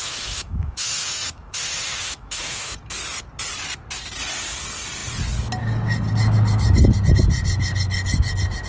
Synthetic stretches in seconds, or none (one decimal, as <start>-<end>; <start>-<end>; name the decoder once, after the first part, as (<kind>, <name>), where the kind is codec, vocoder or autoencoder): 0.0-2.7 (autoencoder, DAC-VAE)